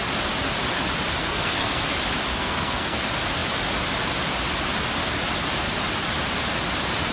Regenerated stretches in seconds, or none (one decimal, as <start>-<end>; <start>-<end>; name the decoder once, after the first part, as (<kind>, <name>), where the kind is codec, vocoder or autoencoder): 1.2-1.8 (codec, SNAC); 2.3-3.0